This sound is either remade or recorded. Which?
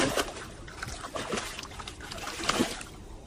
remade